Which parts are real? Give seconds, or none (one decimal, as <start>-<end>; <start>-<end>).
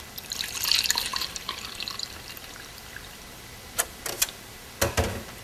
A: 0.0-1.1; 4.0-5.4